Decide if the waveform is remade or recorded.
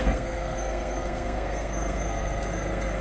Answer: remade